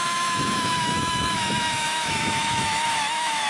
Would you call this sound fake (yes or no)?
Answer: yes